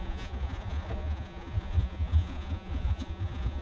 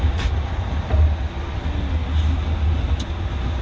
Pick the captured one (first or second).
second